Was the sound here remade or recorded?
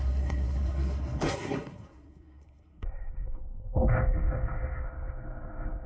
remade